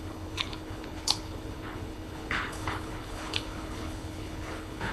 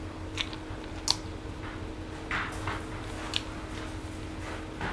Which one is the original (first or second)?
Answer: second